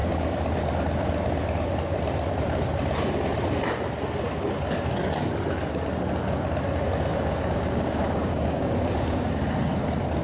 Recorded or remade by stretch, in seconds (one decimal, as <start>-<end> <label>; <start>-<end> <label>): 0.0-7.1 recorded; 7.1-9.3 remade; 9.3-10.2 recorded